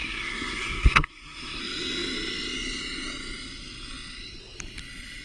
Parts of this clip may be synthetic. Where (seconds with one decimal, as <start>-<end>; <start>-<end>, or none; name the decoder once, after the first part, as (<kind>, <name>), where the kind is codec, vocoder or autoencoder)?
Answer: 0.0-1.6 (codec, SNAC)